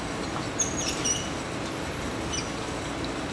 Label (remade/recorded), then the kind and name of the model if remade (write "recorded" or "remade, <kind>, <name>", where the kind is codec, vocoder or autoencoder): recorded